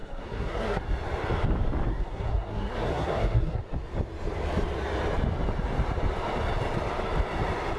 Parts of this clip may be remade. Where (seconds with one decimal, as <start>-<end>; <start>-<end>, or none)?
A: 0.0-0.8; 1.9-3.6